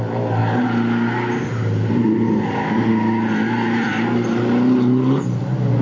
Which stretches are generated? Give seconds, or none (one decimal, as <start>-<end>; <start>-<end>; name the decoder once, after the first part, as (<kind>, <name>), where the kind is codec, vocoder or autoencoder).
none